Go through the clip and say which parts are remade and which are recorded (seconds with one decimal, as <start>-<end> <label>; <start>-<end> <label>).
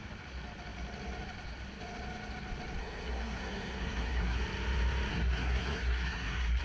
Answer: 0.0-2.8 recorded; 2.8-4.4 remade; 4.4-5.1 recorded; 5.1-6.6 remade